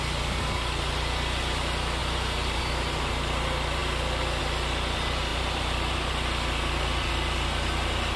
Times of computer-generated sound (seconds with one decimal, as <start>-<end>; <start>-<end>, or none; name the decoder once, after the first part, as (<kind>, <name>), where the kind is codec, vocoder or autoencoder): 2.0-2.6 (vocoder, BigVGAN v2); 5.3-6.1